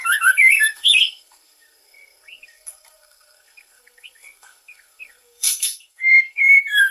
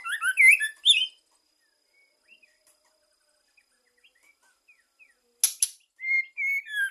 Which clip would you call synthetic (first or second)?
first